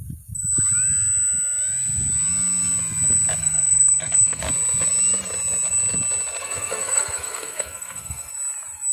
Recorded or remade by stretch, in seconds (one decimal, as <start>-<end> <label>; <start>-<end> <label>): 0.0-3.4 recorded; 3.4-4.4 remade; 4.4-6.4 recorded; 6.4-8.3 remade; 8.3-8.9 recorded